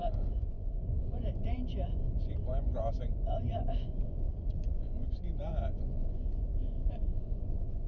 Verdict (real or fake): fake